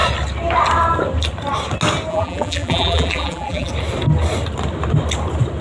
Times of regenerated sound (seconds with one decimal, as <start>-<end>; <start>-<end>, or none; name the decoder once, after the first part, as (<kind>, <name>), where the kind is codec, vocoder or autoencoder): 2.1-3.7 (vocoder, BigVGAN v2)